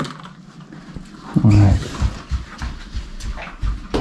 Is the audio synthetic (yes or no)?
no